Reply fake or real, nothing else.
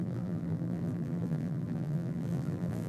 fake